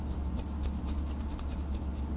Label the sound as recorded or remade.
recorded